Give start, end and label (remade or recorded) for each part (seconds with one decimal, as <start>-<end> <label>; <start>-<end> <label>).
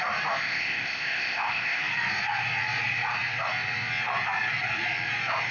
0.0-0.4 recorded; 0.4-1.8 remade; 1.8-5.5 recorded